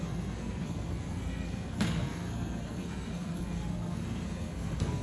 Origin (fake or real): fake